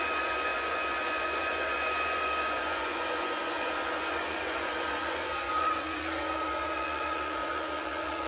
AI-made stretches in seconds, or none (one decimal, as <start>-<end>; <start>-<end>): 0.0-8.3